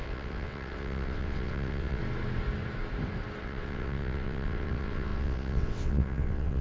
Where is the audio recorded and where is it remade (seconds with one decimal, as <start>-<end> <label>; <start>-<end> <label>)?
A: 0.0-2.0 remade; 2.0-3.4 recorded; 3.4-6.6 remade